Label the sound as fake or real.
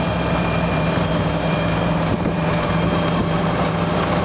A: fake